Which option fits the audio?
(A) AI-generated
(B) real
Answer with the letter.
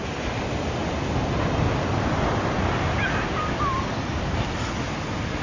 B